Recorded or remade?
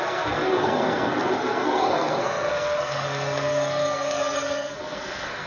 remade